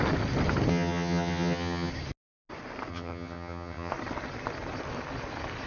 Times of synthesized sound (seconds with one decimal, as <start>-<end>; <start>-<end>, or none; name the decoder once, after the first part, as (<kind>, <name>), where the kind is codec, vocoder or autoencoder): 0.7-1.9 (vocoder, HiFi-GAN); 2.9-3.9